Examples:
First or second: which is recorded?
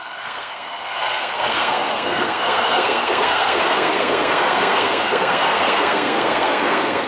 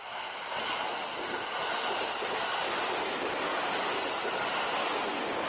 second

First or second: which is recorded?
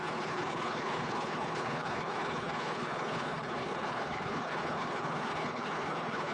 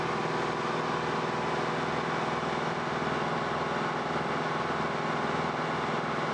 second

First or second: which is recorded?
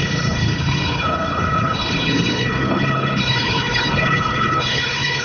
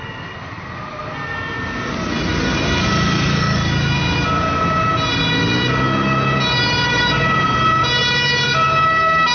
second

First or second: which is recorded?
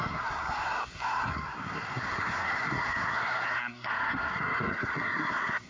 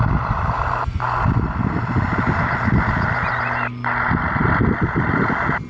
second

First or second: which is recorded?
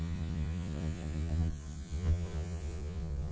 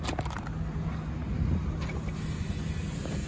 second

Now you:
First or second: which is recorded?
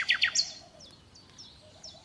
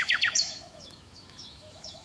first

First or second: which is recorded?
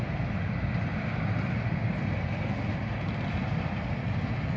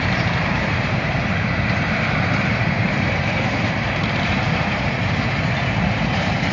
first